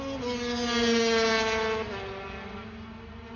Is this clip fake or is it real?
real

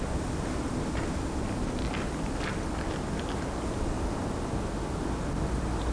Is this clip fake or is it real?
real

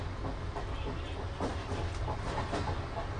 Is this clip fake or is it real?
real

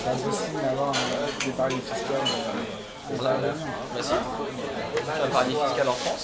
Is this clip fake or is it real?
real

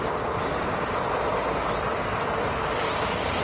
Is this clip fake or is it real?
real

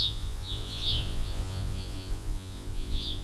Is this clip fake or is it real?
fake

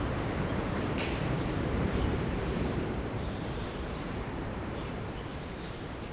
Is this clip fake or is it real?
fake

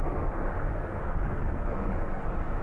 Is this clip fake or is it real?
fake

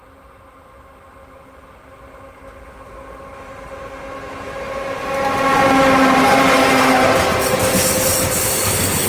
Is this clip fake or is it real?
real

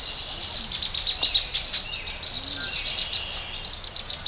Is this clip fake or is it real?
real